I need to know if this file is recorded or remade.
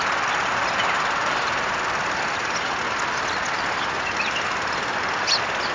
recorded